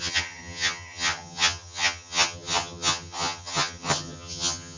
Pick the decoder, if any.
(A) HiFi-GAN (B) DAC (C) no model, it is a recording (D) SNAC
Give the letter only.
A